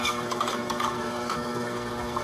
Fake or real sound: fake